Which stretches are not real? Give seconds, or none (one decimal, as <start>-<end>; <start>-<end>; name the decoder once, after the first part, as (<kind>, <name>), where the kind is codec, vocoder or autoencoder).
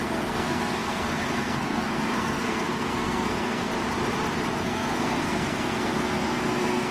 0.0-3.7 (codec, SNAC); 4.6-6.9